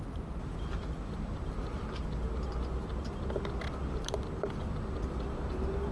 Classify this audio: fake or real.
real